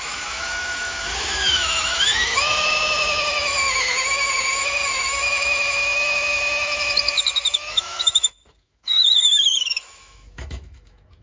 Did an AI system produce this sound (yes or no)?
yes